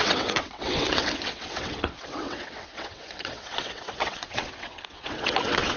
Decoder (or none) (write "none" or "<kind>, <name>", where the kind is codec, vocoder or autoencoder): vocoder, WaveNeXt